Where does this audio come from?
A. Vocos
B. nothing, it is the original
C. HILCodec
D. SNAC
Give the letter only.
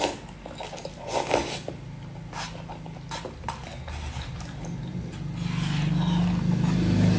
B